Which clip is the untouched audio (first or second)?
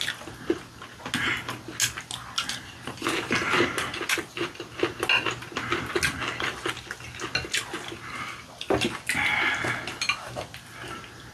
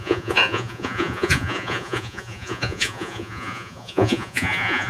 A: first